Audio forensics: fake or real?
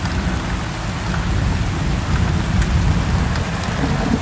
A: real